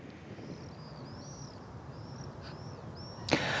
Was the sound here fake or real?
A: real